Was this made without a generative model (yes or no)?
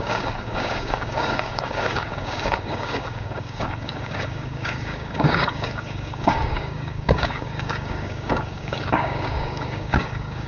no